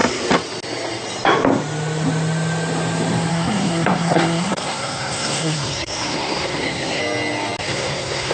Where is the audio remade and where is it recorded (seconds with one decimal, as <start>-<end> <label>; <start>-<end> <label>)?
0.0-3.3 recorded; 3.3-7.0 remade; 7.0-7.6 recorded; 7.6-8.3 remade